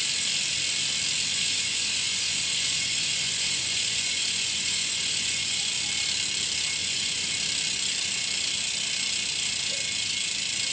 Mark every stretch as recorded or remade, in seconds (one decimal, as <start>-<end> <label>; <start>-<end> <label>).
0.0-1.3 recorded; 1.3-5.7 remade; 5.7-6.8 recorded; 6.8-7.3 remade; 7.3-10.7 recorded